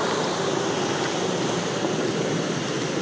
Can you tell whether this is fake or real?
real